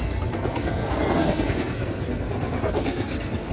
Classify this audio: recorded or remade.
remade